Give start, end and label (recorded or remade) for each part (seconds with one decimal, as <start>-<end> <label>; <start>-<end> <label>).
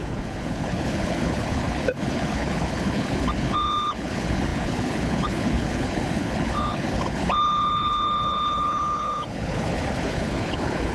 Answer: 0.0-10.9 remade